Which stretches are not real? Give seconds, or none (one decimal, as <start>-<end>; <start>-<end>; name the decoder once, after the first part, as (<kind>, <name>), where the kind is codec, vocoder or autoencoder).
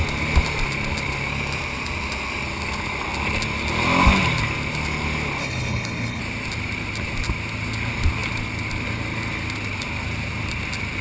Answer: 5.4-6.2 (codec, HILCodec)